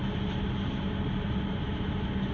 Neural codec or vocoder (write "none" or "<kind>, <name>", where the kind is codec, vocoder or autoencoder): none